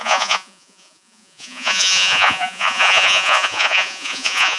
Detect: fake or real fake